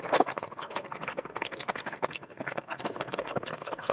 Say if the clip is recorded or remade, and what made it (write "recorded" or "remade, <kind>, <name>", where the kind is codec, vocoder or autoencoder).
remade, codec, SNAC